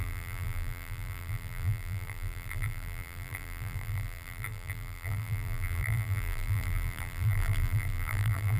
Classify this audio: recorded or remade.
remade